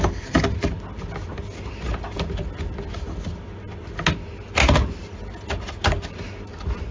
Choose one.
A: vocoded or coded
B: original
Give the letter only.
B